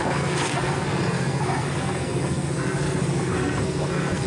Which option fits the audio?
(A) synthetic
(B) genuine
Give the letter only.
A